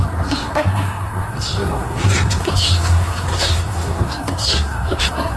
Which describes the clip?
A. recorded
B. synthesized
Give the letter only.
B